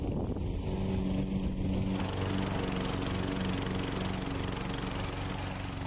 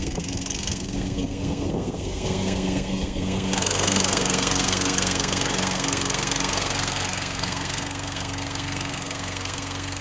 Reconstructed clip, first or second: second